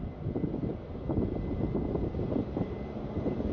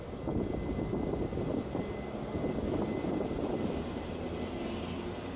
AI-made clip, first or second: first